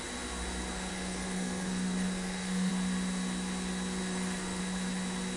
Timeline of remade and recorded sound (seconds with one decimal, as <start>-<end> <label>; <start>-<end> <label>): 0.0-0.9 recorded; 0.9-2.7 remade; 2.7-4.0 recorded; 4.0-4.6 remade; 4.6-5.4 recorded